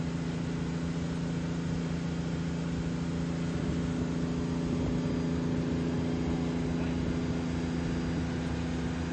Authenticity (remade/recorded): recorded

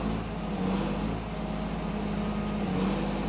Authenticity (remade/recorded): recorded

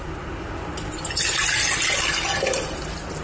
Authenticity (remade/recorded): recorded